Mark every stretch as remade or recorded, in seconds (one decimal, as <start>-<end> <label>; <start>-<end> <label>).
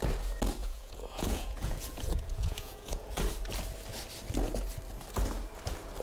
0.0-0.6 recorded; 0.6-3.2 remade; 3.2-6.0 recorded